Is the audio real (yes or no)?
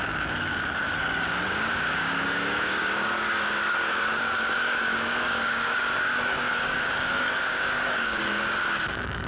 no